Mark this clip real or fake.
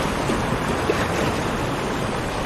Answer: real